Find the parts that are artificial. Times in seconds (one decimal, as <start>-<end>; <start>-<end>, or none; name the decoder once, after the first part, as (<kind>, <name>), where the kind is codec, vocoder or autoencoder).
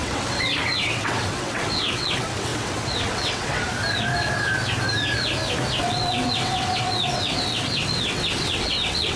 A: 0.0-3.7 (vocoder, WaveNeXt); 5.8-9.2